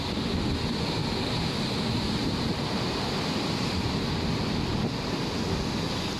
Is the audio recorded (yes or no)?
yes